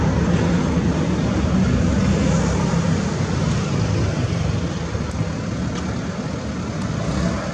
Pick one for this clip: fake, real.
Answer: real